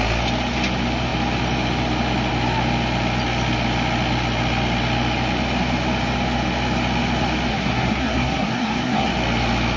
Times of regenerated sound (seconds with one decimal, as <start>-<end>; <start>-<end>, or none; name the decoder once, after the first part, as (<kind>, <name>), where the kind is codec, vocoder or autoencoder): 7.5-9.1 (codec, SNAC)